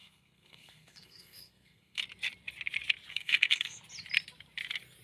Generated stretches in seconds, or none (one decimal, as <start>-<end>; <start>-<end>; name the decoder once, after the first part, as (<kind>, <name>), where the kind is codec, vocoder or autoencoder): 0.0-2.0 (codec, SNAC); 3.1-3.8